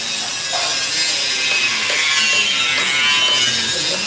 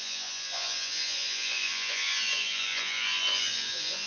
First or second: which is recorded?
first